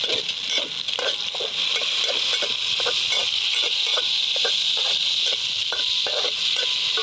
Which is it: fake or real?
real